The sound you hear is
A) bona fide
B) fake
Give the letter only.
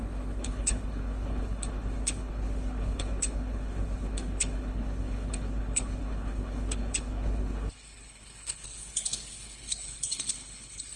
B